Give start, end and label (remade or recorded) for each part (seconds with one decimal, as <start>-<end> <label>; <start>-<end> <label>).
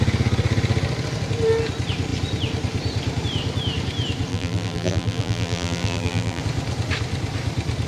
0.0-4.3 recorded; 4.3-6.4 remade; 6.4-7.9 recorded